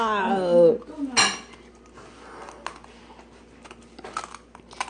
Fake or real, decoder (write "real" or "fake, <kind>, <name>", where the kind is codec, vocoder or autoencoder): real